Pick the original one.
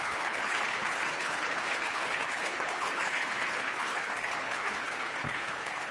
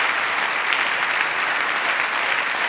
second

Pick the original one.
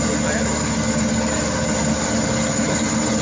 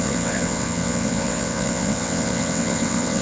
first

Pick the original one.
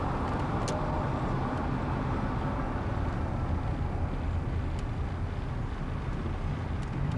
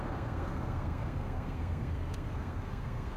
first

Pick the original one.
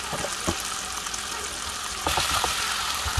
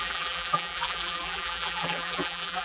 first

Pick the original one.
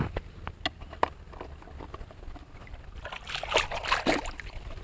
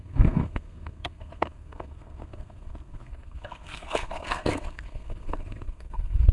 first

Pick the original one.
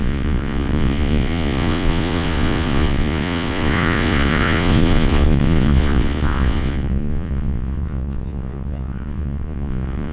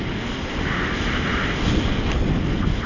second